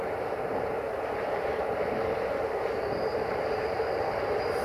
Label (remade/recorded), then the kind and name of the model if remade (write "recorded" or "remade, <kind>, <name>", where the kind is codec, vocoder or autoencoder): remade, vocoder, BigVGAN v2